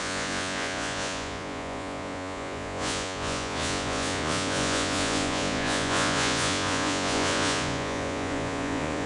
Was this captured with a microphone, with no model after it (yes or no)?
no